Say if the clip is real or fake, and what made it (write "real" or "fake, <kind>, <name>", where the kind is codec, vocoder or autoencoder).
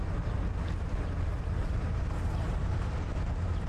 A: real